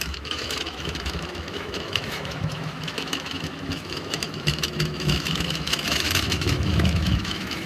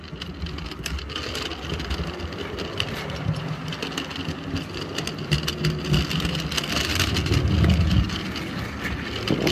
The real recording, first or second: second